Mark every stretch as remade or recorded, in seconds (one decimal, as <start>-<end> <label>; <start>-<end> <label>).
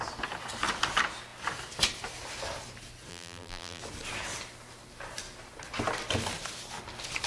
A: 0.0-3.1 recorded; 3.1-3.8 remade; 3.8-7.3 recorded